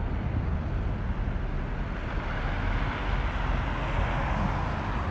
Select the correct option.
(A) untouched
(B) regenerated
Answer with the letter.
A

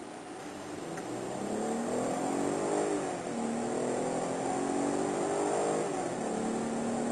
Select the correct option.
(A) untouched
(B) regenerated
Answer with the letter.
A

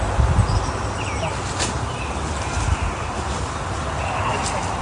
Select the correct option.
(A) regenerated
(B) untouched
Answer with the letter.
B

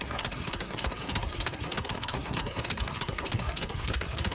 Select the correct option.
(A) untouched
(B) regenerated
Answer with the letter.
B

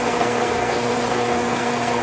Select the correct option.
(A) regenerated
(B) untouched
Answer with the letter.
A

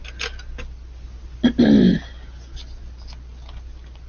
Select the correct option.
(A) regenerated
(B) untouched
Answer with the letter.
B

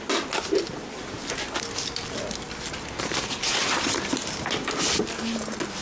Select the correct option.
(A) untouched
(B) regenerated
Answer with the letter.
A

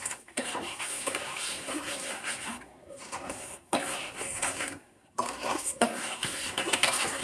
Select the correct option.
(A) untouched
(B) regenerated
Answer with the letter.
B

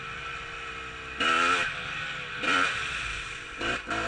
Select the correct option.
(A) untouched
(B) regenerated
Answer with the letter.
A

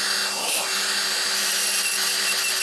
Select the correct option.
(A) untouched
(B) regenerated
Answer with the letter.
A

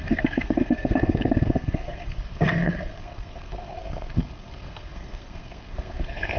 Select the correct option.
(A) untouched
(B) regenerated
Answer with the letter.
B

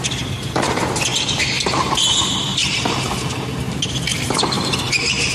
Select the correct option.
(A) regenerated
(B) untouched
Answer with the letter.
B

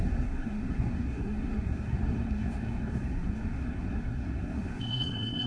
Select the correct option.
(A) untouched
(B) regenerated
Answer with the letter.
B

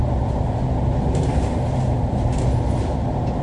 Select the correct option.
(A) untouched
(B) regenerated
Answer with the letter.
A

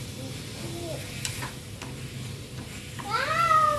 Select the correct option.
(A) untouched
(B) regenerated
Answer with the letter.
A